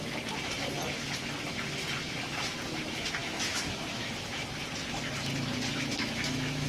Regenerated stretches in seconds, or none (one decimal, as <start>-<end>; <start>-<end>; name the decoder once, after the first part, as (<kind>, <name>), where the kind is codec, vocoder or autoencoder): 3.2-4.1 (autoencoder, DAC-VAE); 5.9-6.7